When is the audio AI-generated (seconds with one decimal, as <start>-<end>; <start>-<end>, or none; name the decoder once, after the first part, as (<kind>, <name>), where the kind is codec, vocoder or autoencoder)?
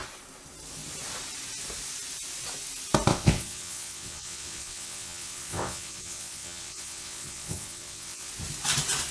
3.1-8.3 (vocoder, WaveNeXt)